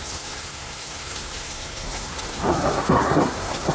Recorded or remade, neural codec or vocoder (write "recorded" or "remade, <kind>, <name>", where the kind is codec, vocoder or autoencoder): remade, codec, SNAC